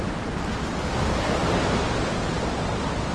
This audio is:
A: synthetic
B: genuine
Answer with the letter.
B